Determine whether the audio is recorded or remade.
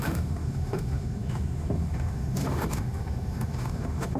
remade